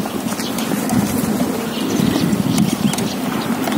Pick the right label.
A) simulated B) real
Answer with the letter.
B